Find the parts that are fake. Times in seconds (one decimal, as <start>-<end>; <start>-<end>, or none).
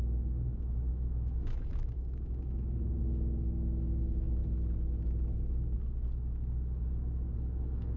0.0-4.4; 7.6-8.0